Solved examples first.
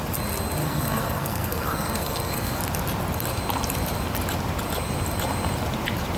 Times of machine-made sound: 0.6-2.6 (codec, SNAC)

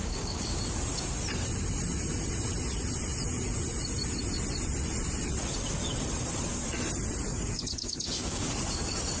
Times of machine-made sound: 0.0-0.6 (codec, DAC); 7.3-8.5

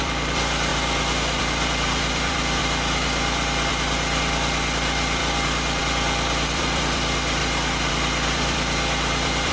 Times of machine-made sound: 0.0-2.6 (vocoder, BigVGAN v2); 3.7-5.2; 5.8-7.4; 7.9-9.5

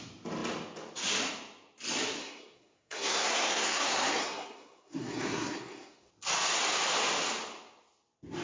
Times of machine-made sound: 2.2-6.1 (codec, SNAC)

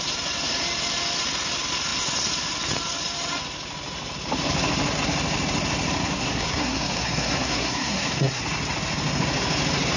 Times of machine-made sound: 6.0-8.4 (codec, SNAC)

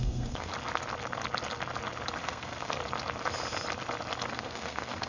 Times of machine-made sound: 0.0-0.5 (codec, SNAC); 2.2-2.8; 4.3-5.1

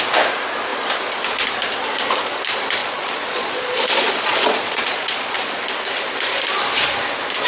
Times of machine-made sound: 2.8-5.4 (vocoder, Vocos)